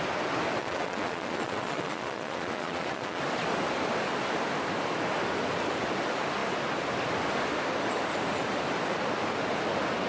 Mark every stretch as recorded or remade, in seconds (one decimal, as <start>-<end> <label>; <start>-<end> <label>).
0.0-0.6 recorded; 0.6-3.2 remade; 3.2-10.1 recorded